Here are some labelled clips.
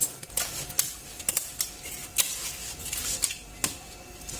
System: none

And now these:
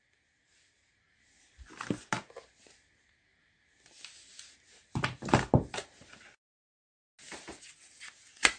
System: none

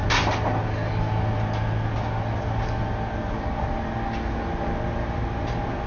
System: none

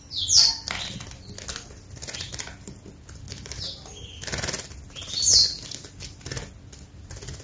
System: none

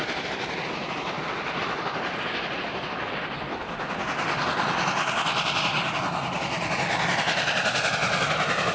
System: none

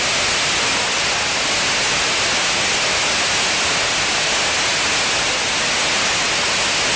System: none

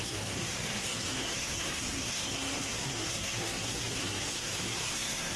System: codec, SNAC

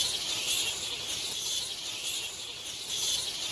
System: none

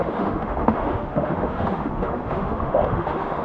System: autoencoder, DAC-VAE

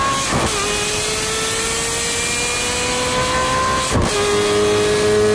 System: none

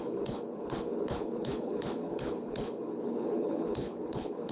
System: codec, HILCodec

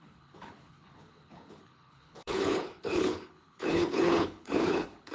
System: codec, HILCodec